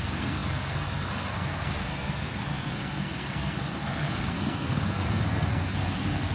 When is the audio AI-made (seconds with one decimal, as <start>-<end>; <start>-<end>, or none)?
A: 0.0-6.3